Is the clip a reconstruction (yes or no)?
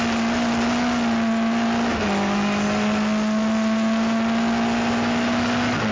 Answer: no